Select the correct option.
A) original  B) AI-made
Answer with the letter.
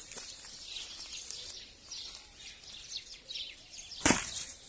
B